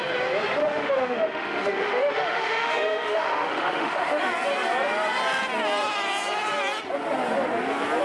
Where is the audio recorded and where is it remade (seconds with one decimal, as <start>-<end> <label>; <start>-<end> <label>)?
0.0-0.6 recorded; 0.6-4.2 remade; 4.2-8.0 recorded